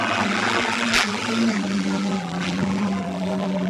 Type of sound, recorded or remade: remade